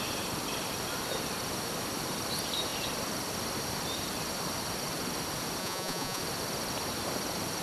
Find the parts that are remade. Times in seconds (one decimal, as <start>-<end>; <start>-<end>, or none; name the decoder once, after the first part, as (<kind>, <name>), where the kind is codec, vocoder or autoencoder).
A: 5.6-6.2 (vocoder, Vocos)